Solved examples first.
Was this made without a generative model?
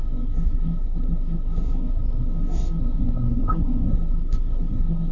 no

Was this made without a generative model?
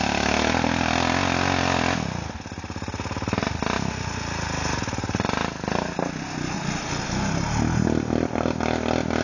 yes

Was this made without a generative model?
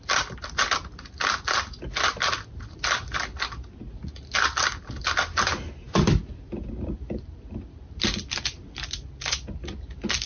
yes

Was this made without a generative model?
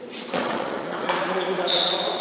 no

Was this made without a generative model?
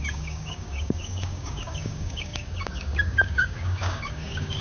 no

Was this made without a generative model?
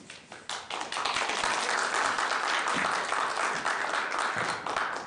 yes